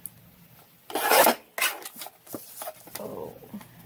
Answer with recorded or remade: recorded